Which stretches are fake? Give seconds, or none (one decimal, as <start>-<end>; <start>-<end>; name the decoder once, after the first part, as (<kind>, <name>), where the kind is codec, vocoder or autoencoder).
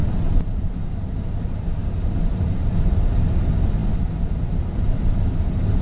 0.0-0.7 (vocoder, BigVGAN v2); 1.8-2.5